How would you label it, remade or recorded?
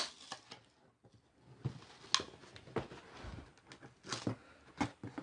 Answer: recorded